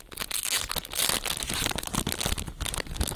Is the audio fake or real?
real